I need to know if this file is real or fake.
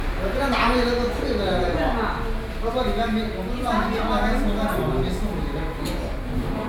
real